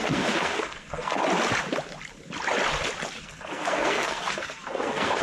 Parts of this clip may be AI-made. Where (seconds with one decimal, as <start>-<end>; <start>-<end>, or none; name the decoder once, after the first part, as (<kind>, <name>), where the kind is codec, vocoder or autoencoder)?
0.0-1.2 (codec, SNAC); 3.2-5.2